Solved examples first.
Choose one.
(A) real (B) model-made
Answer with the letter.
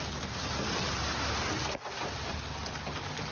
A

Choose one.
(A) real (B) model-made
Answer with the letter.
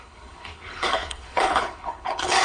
B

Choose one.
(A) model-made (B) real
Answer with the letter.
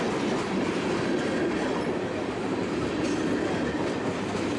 B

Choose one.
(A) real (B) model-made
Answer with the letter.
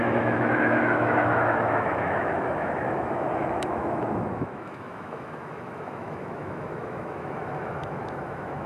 B